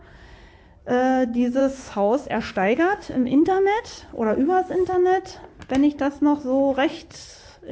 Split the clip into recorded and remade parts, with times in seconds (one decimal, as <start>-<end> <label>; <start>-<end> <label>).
0.0-1.6 recorded; 1.6-3.8 remade; 3.8-7.7 recorded